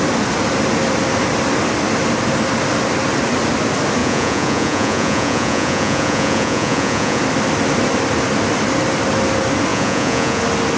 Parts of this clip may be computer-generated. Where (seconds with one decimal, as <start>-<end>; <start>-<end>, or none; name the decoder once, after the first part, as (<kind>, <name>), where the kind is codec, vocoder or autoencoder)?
4.0-7.2 (vocoder, Vocos); 9.7-10.4